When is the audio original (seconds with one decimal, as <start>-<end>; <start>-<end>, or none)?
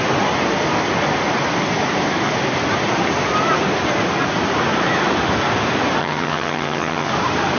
0.0-6.0; 7.1-7.6